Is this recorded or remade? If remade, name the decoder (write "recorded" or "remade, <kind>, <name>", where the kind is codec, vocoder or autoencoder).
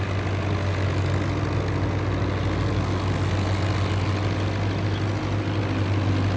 recorded